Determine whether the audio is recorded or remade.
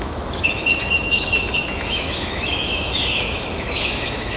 remade